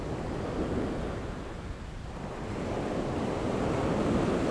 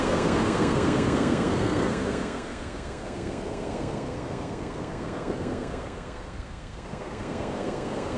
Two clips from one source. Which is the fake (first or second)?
second